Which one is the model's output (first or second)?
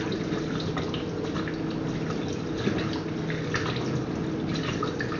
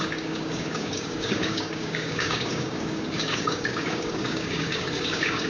second